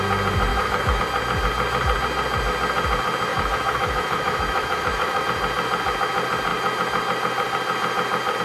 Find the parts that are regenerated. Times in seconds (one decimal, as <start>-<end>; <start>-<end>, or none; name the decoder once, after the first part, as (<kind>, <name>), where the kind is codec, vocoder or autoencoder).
0.5-1.0 (autoencoder, DAC-VAE); 3.3-5.2